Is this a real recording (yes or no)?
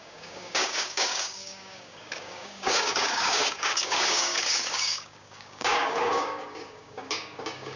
no